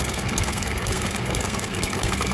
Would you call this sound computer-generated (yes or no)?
yes